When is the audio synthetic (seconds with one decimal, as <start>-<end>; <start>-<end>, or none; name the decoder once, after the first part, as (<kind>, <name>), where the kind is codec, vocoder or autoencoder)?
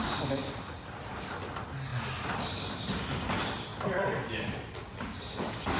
none